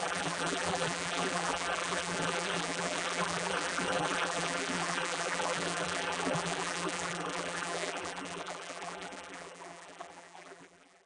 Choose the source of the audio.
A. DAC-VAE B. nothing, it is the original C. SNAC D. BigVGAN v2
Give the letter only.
D